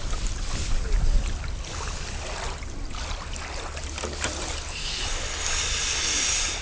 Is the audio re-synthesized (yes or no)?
no